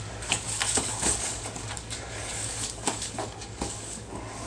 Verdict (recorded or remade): remade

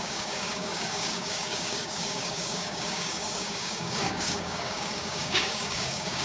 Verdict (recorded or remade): remade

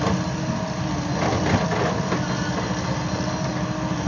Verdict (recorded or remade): recorded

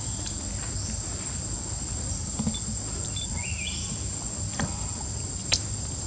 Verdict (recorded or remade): recorded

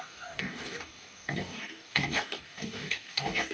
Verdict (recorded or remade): remade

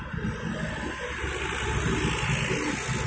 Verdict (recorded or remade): recorded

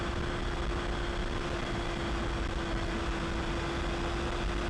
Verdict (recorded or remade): recorded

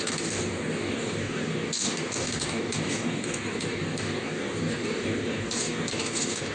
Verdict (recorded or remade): remade